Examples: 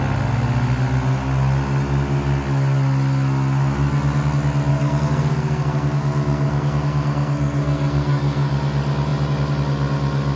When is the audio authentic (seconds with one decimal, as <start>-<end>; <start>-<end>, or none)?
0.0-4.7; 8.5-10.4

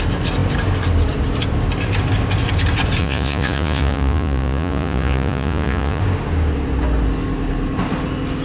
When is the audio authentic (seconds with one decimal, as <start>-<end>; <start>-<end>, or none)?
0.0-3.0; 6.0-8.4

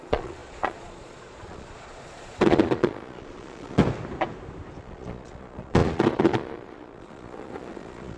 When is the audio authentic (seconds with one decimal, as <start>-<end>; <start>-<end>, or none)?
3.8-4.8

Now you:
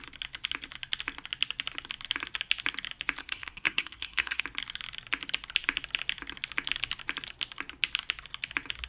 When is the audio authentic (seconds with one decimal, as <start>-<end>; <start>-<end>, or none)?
0.0-3.2; 4.4-8.9

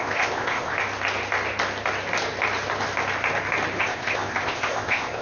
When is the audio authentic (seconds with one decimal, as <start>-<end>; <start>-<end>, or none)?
0.7-3.8

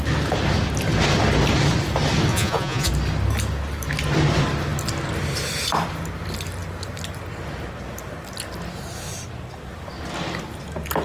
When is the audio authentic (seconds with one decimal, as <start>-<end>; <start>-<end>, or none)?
0.0-2.3; 2.9-11.0